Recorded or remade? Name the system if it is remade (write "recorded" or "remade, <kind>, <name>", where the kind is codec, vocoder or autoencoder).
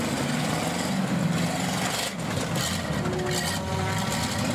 recorded